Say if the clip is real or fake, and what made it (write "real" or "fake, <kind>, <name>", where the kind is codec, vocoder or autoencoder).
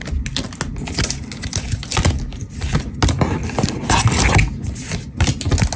real